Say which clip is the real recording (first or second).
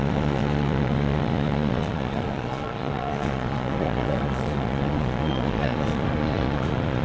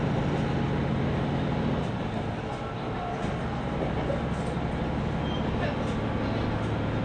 second